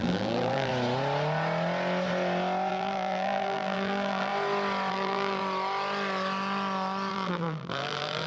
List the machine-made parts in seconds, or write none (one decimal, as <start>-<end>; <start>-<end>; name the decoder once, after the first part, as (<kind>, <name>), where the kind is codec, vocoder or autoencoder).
0.0-0.7 (vocoder, BigVGAN v2); 2.7-4.3; 4.9-5.4; 7.1-8.3